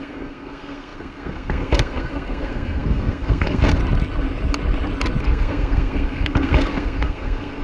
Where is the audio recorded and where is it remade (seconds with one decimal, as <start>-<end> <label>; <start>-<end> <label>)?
0.0-3.8 remade; 3.8-5.2 recorded; 5.2-7.6 remade